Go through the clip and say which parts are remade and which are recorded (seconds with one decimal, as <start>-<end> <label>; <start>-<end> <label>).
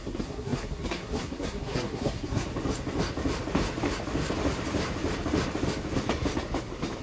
0.0-2.5 remade; 2.5-7.0 recorded